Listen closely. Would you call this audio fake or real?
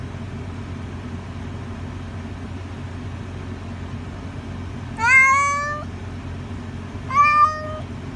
real